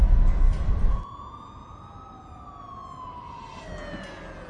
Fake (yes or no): no